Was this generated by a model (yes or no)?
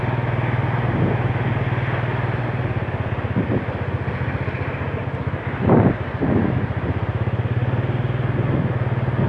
no